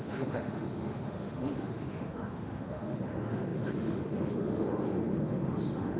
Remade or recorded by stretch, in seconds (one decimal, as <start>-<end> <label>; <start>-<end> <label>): 0.0-6.0 remade